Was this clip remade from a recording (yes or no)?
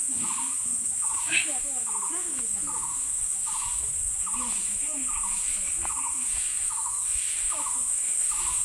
yes